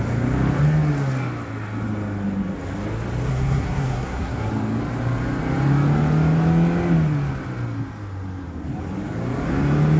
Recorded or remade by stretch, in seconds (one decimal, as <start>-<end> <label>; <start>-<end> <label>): 0.0-3.3 recorded; 3.3-4.5 remade; 4.5-10.0 recorded